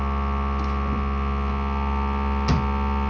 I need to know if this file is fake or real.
real